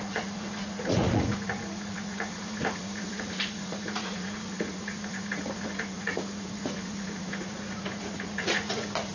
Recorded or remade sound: remade